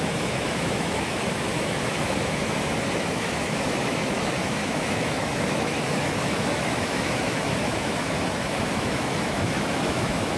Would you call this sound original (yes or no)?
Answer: no